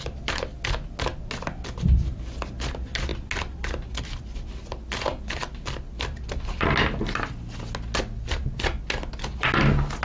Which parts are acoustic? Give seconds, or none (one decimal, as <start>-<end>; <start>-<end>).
0.0-10.0